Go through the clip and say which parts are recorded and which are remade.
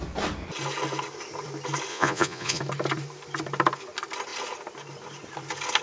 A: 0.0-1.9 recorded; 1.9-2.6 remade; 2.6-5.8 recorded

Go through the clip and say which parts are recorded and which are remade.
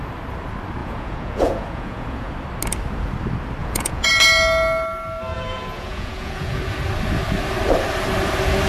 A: 0.0-0.8 recorded; 0.8-2.3 remade; 2.3-3.6 recorded; 3.6-4.1 remade; 4.1-5.3 recorded; 5.3-6.6 remade; 6.6-8.7 recorded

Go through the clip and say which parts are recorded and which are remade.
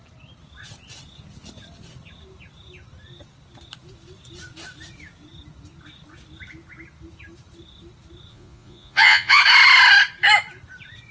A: 0.0-8.3 recorded; 8.3-9.4 remade; 9.4-11.1 recorded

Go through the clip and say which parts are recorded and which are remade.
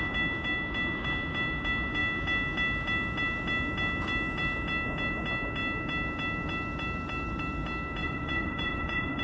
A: 0.0-8.0 recorded; 8.0-9.2 remade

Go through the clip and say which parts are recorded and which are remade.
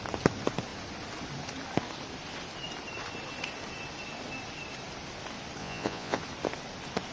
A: 0.0-5.6 recorded; 5.6-6.2 remade; 6.2-7.1 recorded